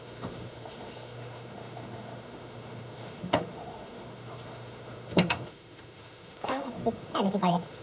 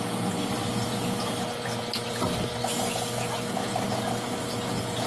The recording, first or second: second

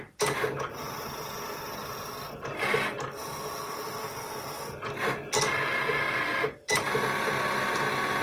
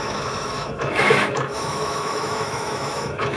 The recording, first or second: first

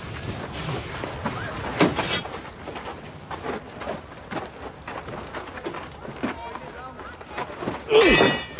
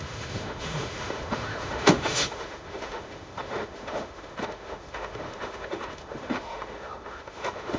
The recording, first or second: first